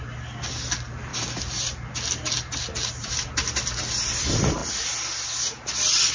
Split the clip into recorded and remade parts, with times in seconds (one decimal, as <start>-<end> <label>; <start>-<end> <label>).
0.0-6.1 recorded